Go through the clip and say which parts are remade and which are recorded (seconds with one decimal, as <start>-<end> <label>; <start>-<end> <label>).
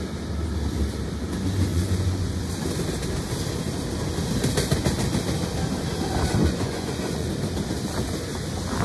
0.0-1.7 recorded; 1.7-2.5 remade; 2.5-6.4 recorded; 6.4-7.3 remade; 7.3-8.8 recorded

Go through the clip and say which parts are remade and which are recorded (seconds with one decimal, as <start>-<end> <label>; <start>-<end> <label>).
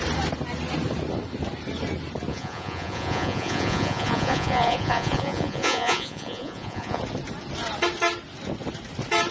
0.0-2.3 recorded; 2.3-7.0 remade; 7.0-9.3 recorded